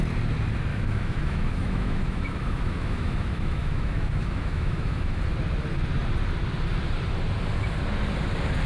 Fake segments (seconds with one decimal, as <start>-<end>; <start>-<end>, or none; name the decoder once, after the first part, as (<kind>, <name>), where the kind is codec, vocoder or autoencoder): 0.7-5.2 (autoencoder, DAC-VAE)